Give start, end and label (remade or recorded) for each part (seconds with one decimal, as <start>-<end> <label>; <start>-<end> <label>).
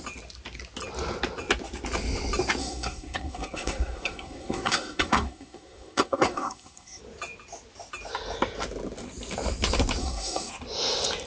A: 0.0-2.6 recorded; 2.6-7.0 remade; 7.0-10.0 recorded; 10.0-10.5 remade; 10.5-11.3 recorded